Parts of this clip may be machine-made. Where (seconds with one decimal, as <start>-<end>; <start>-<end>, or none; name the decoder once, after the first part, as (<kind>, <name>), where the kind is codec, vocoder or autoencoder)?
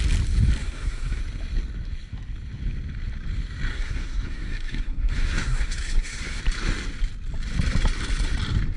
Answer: 0.6-1.2 (codec, SNAC); 3.7-6.4